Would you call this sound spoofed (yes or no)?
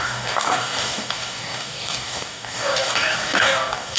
yes